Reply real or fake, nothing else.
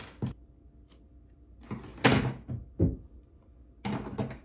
real